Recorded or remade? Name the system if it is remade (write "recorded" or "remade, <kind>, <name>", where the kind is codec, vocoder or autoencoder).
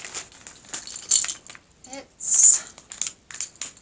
recorded